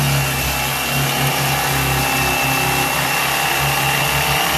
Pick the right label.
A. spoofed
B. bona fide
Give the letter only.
B